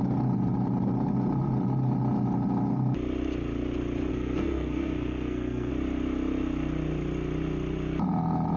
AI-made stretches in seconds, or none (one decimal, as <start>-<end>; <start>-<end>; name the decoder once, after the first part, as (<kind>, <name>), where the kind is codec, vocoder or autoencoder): 4.1-5.7 (codec, SNAC)